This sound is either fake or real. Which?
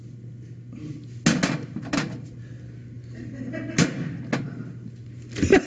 real